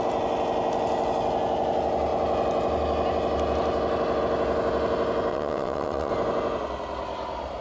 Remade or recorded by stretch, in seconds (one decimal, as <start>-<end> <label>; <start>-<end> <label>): 0.0-5.3 recorded; 5.3-6.1 remade; 6.1-7.6 recorded

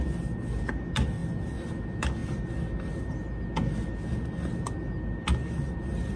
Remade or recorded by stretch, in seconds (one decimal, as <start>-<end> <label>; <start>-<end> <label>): 0.0-6.2 recorded

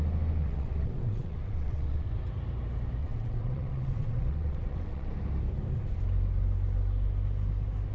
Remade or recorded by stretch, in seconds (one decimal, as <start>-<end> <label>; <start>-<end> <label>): 0.0-0.4 recorded; 0.4-2.1 remade; 2.1-3.0 recorded; 3.0-5.1 remade; 5.1-7.9 recorded

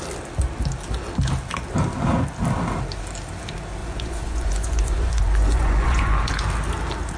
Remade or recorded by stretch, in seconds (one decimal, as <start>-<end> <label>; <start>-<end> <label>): 0.0-3.8 recorded; 3.8-6.3 remade; 6.3-7.2 recorded

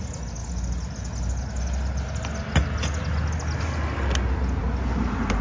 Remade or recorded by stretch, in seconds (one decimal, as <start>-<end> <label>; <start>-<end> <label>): 0.0-5.4 recorded

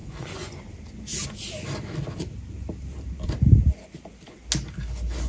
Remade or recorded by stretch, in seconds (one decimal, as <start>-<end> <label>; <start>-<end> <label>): 0.0-0.6 remade; 0.6-5.3 recorded

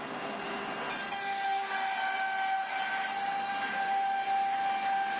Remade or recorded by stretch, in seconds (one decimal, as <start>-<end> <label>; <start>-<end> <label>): 0.0-5.2 recorded